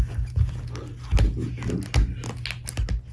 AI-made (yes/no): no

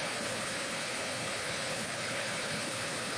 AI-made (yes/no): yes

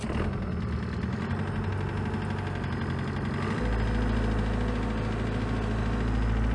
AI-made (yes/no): no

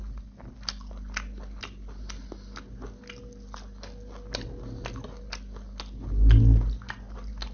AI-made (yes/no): no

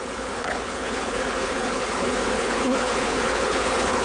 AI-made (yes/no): yes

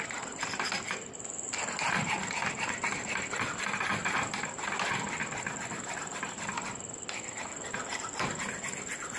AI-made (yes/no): no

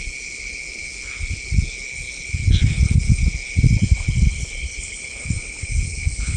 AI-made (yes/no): yes